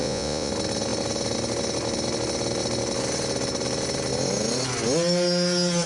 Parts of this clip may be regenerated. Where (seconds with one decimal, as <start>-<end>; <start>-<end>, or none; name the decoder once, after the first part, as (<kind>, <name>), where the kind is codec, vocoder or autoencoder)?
0.0-0.5 (vocoder, Vocos)